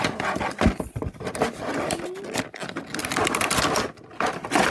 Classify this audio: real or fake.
real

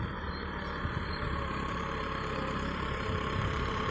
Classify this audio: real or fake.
fake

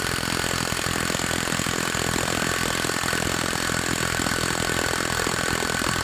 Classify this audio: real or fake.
fake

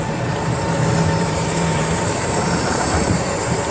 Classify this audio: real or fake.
fake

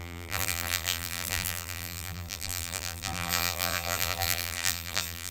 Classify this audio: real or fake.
fake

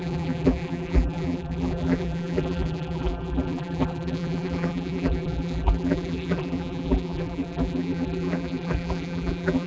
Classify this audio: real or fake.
fake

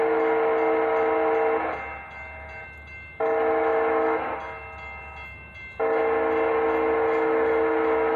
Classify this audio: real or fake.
real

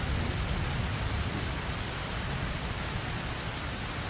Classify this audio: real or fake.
fake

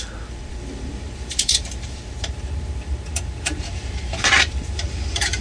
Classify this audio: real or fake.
fake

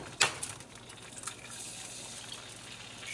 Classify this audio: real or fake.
real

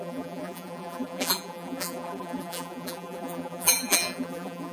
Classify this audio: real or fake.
fake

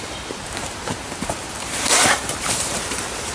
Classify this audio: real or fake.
fake